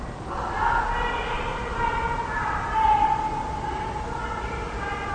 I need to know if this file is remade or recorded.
recorded